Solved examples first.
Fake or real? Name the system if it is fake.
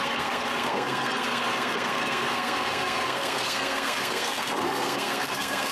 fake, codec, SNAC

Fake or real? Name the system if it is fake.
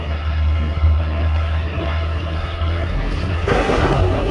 fake, codec, SNAC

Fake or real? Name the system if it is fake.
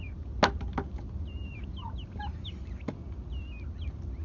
real